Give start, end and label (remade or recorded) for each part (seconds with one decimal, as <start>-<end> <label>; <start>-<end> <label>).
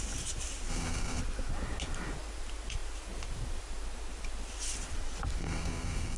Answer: 0.0-0.7 recorded; 0.7-1.2 remade; 1.2-5.4 recorded; 5.4-6.2 remade